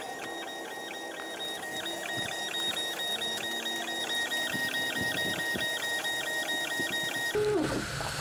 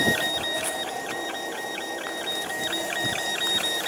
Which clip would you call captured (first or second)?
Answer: first